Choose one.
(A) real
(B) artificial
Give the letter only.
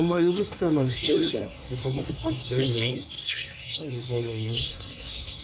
B